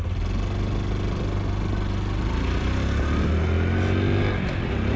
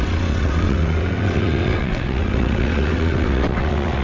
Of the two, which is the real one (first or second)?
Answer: first